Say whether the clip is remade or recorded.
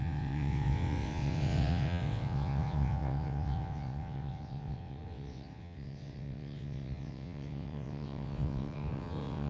remade